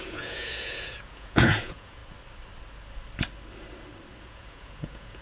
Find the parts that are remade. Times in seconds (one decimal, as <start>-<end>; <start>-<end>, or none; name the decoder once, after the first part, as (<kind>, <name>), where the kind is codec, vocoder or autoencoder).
0.0-2.0 (vocoder, Vocos); 4.2-5.2